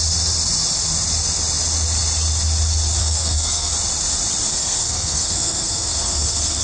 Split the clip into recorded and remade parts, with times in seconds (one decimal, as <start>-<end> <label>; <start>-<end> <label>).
0.0-3.0 recorded; 3.0-3.7 remade; 3.7-4.5 recorded; 4.5-6.6 remade